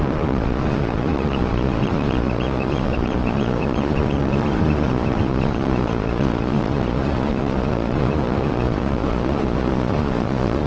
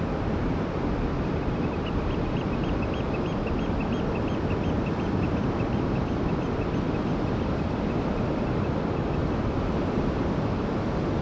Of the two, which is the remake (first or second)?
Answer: first